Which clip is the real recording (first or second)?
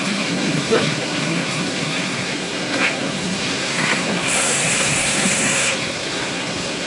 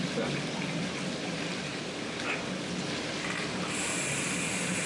second